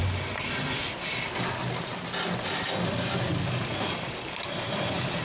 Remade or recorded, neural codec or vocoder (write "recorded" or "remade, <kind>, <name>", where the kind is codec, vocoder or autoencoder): recorded